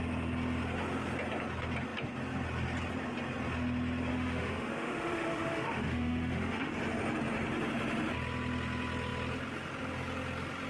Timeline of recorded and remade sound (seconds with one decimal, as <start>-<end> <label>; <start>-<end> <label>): 0.0-4.1 recorded; 4.1-6.7 remade; 6.7-10.7 recorded